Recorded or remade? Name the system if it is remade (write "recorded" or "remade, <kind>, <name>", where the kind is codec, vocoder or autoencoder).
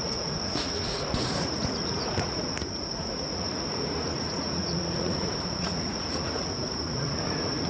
remade, vocoder, Vocos